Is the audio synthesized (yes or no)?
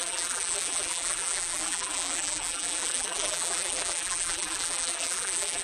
yes